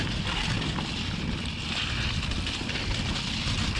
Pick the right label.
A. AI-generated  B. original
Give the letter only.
B